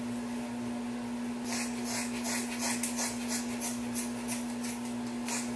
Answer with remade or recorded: recorded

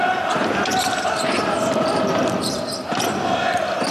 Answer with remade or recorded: remade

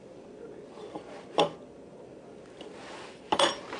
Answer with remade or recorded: recorded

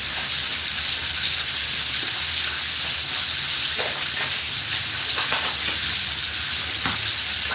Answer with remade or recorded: recorded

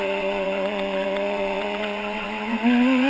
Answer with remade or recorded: remade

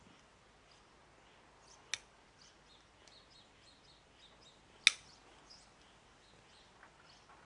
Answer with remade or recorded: recorded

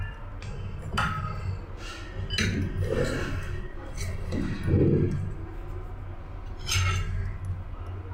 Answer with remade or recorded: recorded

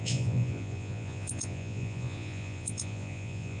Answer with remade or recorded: remade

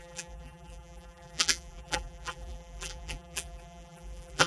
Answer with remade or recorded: remade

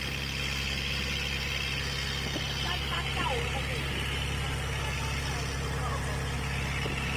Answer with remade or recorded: recorded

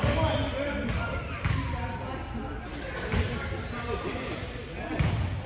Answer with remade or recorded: recorded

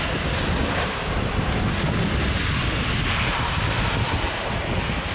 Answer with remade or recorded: recorded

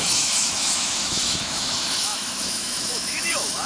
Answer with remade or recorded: remade